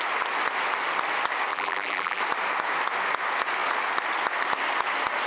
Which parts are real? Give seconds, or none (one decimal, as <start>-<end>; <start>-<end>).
0.0-1.5; 2.2-5.3